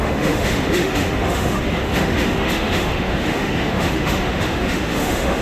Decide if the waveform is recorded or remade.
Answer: remade